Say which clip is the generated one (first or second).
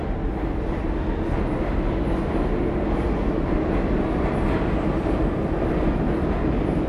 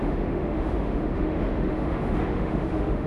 second